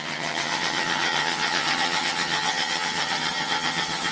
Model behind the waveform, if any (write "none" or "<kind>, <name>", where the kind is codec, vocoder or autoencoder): vocoder, HiFi-GAN